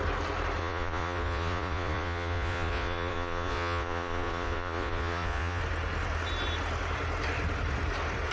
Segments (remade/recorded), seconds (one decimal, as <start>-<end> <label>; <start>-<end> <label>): 0.0-0.6 recorded; 0.6-5.6 remade; 5.6-8.3 recorded